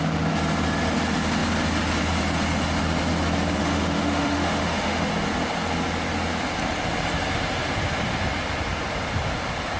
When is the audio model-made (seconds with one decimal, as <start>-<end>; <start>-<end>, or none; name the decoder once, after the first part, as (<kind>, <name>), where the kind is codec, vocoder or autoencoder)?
3.6-5.1 (autoencoder, DAC-VAE)